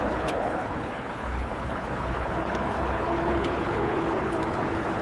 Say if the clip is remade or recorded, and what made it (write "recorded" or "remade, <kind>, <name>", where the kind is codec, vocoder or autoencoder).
remade, codec, HILCodec